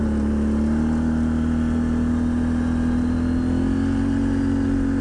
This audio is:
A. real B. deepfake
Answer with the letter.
A